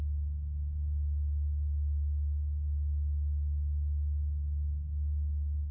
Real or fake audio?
real